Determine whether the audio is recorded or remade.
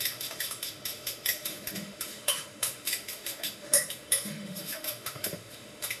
remade